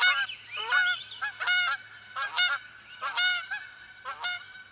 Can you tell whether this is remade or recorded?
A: recorded